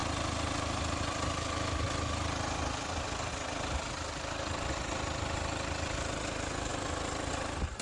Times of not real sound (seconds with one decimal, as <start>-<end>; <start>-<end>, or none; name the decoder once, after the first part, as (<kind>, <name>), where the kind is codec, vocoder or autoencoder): none